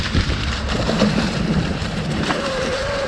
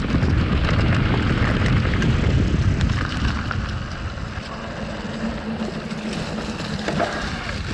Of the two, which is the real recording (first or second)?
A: second